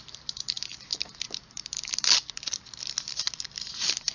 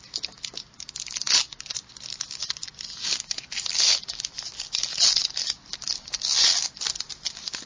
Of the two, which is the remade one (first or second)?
first